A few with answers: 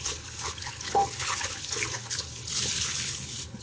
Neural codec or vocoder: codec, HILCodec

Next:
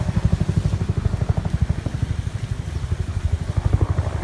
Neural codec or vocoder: none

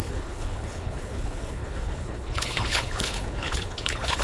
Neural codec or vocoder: codec, HILCodec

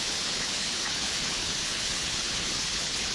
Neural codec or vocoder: codec, HILCodec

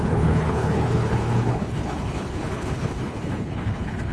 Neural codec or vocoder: codec, HILCodec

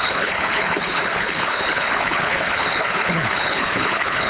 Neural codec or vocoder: codec, HILCodec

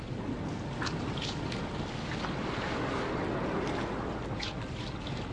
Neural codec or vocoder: none